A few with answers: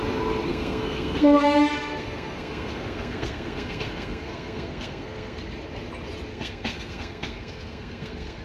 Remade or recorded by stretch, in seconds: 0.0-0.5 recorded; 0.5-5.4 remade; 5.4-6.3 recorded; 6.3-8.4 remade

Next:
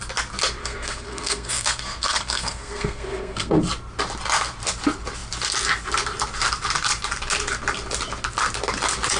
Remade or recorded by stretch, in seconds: 0.0-0.6 recorded; 0.6-3.6 remade; 3.6-9.2 recorded